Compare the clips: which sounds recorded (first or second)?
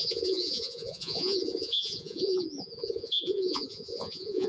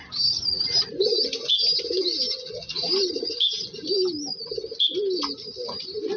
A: second